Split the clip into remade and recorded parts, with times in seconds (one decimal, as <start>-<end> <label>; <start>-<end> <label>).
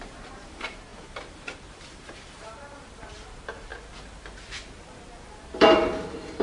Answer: 0.0-3.7 remade; 3.7-5.4 recorded; 5.4-6.4 remade